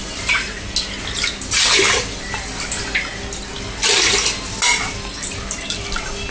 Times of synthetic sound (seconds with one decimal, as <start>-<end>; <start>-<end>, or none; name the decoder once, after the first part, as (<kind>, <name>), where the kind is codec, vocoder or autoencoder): none